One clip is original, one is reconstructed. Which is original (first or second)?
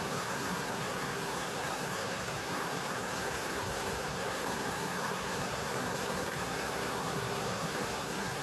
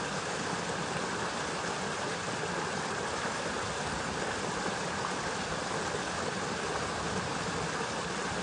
second